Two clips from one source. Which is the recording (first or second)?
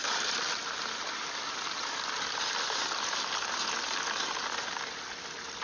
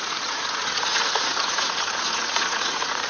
first